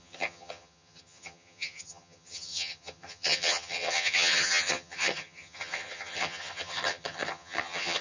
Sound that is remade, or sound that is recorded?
remade